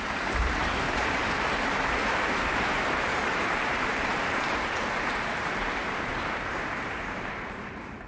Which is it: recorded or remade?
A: remade